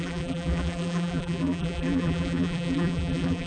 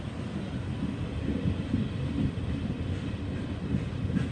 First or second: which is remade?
first